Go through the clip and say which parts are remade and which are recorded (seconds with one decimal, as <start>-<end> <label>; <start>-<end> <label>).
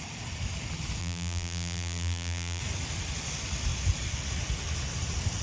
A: 0.0-1.0 recorded; 1.0-2.6 remade; 2.6-5.4 recorded